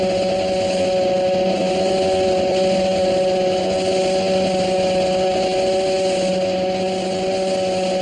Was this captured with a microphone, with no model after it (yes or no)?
yes